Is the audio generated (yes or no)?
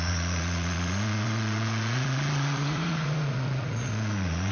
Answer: yes